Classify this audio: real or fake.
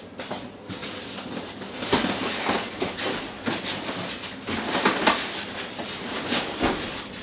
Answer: real